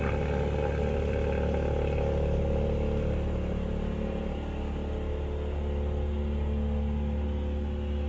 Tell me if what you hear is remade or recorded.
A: recorded